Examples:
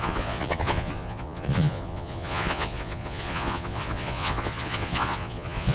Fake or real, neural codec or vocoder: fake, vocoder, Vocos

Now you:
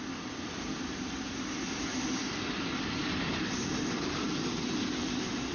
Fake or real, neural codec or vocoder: real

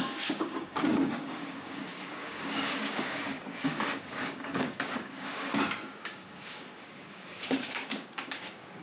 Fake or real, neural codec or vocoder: fake, codec, DAC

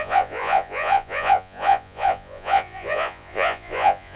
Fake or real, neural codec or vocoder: fake, vocoder, Vocos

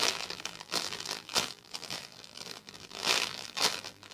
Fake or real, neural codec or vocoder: fake, vocoder, BigVGAN v2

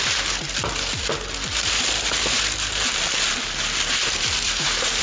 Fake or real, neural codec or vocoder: real